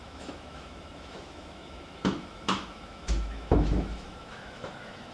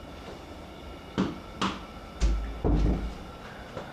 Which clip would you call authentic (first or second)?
second